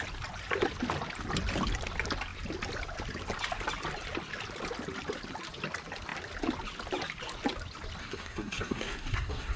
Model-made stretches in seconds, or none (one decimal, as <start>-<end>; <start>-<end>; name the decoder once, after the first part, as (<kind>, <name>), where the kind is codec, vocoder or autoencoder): 8.0-9.6 (codec, SNAC)